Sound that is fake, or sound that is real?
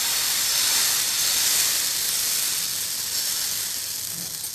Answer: real